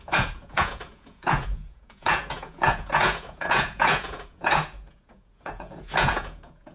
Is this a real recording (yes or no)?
no